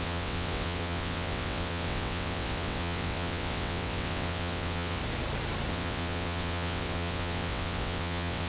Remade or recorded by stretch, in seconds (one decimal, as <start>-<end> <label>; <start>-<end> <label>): 0.0-5.0 remade; 5.0-5.7 recorded; 5.7-8.5 remade